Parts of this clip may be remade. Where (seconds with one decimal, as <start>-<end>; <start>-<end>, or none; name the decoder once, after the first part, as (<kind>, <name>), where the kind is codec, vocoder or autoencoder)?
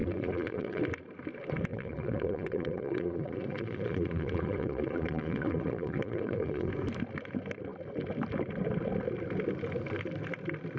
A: 0.0-0.8 (vocoder, Vocos); 1.7-6.7